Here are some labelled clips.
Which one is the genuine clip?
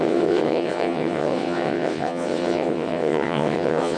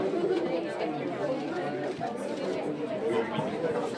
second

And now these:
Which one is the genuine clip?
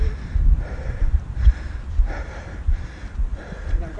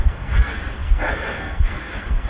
first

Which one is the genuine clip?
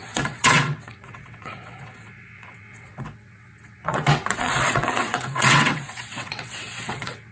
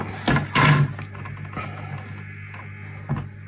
second